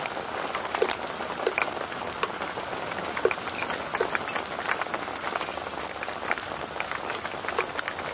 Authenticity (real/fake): real